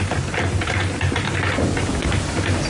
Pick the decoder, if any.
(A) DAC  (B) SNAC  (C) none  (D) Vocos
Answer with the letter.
C